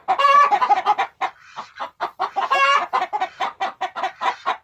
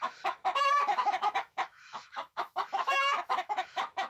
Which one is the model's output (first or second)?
second